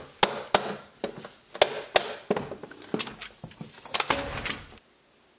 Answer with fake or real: real